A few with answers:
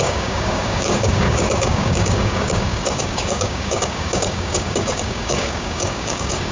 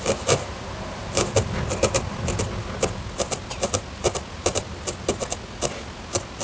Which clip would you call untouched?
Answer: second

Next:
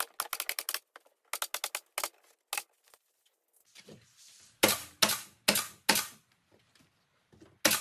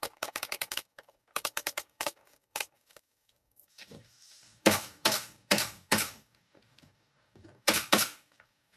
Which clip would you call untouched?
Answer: first